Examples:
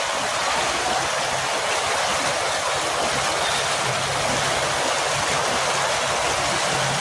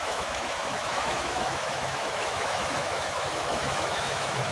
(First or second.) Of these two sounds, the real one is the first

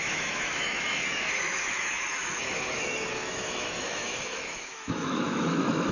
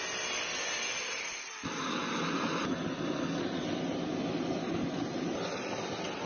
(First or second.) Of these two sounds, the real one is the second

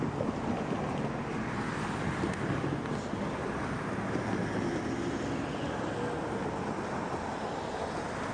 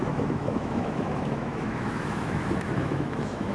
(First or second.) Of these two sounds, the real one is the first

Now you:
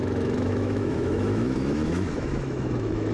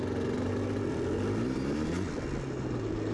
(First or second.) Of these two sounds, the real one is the second